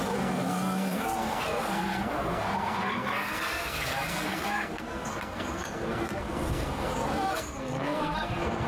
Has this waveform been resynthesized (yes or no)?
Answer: yes